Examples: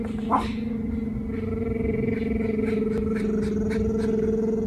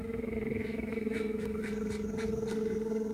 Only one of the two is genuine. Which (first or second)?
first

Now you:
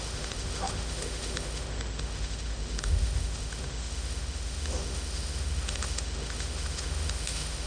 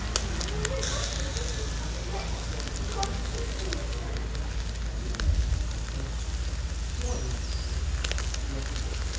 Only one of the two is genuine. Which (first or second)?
second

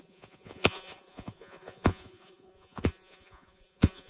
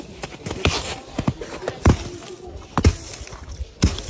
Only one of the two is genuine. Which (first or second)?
second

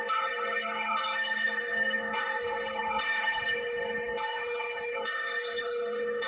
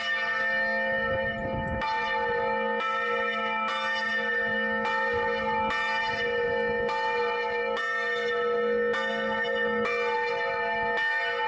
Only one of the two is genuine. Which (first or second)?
second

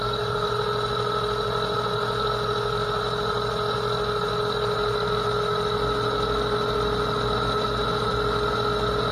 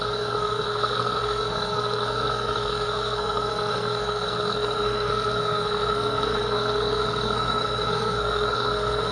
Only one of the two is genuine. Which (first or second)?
first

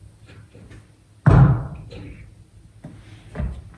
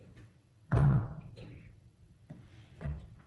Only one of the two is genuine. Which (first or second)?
first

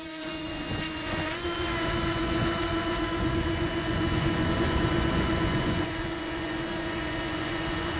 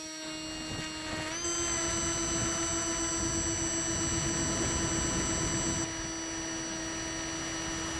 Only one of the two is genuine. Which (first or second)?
second